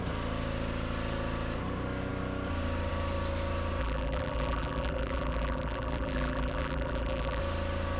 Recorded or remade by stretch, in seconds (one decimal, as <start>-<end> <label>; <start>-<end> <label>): 0.0-3.8 recorded; 3.8-7.4 remade; 7.4-8.0 recorded